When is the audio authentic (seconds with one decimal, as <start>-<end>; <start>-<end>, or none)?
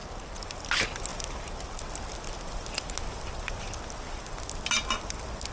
0.0-5.5